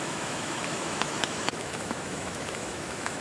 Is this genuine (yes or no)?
no